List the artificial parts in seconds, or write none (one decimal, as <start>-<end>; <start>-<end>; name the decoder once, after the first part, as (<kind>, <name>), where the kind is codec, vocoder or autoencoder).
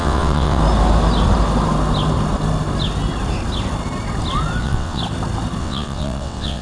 0.0-0.6 (vocoder, WaveNeXt); 4.6-5.0; 5.6-6.6